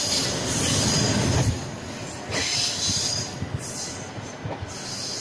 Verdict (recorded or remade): recorded